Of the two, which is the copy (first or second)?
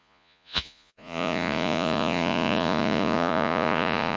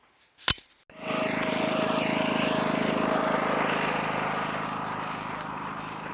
first